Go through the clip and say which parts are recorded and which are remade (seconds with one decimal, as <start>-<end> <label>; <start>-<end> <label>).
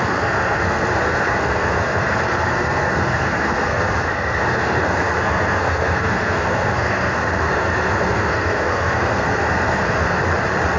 0.0-10.2 remade; 10.2-10.8 recorded